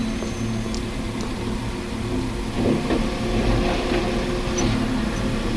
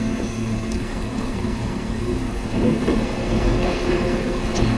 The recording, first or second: first